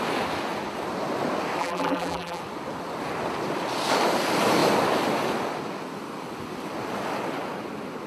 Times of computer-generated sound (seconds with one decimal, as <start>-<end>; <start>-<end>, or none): 1.6-2.4